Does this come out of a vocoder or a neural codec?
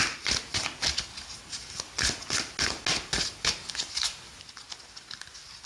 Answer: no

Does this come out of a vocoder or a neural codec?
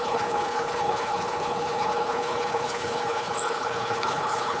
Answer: yes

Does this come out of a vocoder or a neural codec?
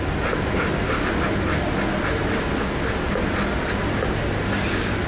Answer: no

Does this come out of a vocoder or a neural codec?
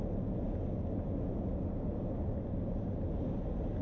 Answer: no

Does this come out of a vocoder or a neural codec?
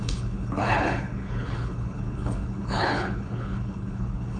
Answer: yes